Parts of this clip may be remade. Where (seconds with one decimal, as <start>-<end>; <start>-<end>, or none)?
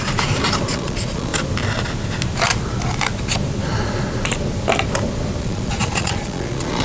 0.7-1.3; 5.4-6.8